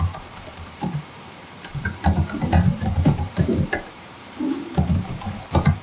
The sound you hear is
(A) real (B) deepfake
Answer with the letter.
B